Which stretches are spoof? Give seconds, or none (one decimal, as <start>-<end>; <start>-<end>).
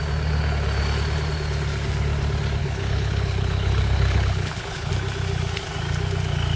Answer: 2.6-4.9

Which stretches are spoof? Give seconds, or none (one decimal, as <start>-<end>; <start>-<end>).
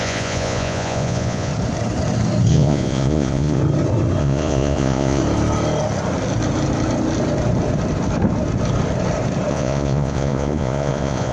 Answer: 0.0-1.5; 2.5-3.6; 4.2-5.2; 9.5-11.3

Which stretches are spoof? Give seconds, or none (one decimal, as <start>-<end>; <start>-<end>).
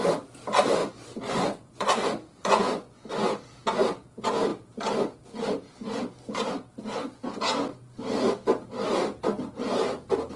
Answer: 0.8-3.1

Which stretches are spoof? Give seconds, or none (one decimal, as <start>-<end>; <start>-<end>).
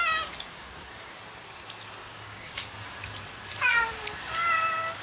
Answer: 0.5-1.1; 2.0-3.0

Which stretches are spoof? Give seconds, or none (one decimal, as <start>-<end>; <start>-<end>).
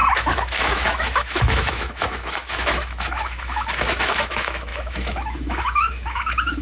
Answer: 0.0-6.6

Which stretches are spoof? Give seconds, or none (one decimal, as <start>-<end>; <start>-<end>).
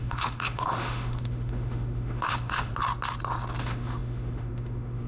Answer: 0.0-2.7; 3.6-5.1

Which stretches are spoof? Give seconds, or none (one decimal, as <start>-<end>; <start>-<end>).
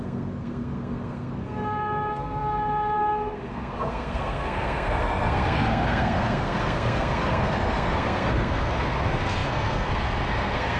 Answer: 0.0-10.8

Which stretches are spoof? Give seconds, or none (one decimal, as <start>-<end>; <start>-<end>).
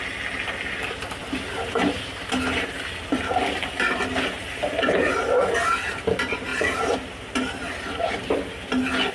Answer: none